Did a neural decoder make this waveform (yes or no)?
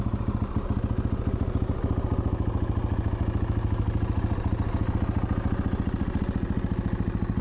no